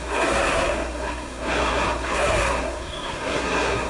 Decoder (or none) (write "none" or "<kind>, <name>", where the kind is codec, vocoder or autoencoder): codec, SNAC